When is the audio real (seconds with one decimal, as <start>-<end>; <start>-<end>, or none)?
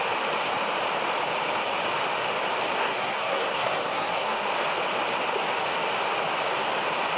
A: 0.0-2.8; 4.4-7.2